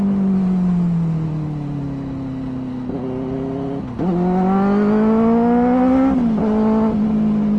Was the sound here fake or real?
real